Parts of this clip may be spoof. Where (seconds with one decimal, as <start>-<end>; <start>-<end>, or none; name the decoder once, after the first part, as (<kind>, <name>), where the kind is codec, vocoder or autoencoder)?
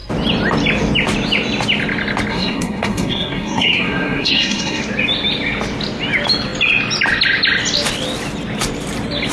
2.3-4.8 (codec, SNAC)